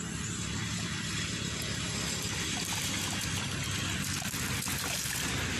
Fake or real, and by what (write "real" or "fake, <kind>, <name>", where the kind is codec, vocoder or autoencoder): real